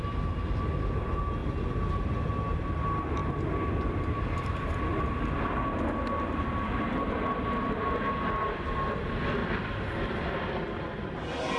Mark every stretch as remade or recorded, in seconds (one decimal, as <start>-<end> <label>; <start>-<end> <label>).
0.0-11.6 recorded

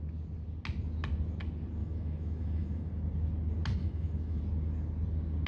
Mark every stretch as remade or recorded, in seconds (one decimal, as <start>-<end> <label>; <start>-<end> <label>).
0.0-1.8 recorded; 1.8-2.9 remade; 2.9-3.8 recorded; 3.8-4.4 remade; 4.4-5.5 recorded

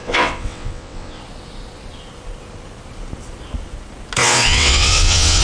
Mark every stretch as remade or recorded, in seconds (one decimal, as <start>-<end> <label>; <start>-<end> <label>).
0.0-1.2 remade; 1.2-4.2 recorded; 4.2-5.4 remade